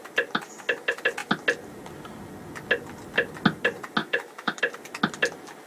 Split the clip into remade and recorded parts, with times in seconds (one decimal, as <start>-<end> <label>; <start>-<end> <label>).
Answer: 0.0-4.0 recorded; 4.0-4.6 remade; 4.6-5.7 recorded